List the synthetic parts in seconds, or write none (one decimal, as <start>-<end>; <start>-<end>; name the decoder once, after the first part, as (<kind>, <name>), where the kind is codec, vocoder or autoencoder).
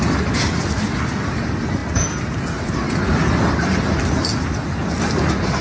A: none